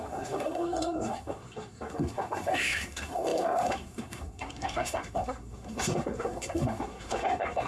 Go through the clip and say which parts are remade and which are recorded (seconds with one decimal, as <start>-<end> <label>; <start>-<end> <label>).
0.0-7.7 remade